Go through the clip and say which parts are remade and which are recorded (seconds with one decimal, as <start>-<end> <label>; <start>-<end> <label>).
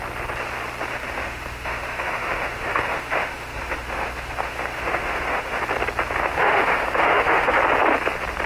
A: 0.0-0.9 recorded; 0.9-5.6 remade; 5.6-6.2 recorded; 6.2-7.6 remade; 7.6-8.5 recorded